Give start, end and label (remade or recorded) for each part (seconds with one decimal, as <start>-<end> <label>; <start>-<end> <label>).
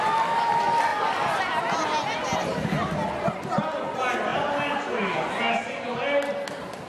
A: 0.0-6.9 recorded